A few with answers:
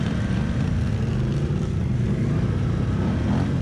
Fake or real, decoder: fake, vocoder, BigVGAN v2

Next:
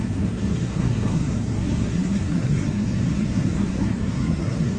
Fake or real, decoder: fake, codec, SNAC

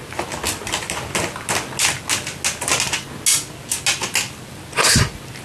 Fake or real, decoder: real